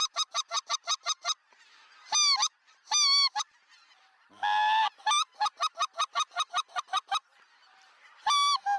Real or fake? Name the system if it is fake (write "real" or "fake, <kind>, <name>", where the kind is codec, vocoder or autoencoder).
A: real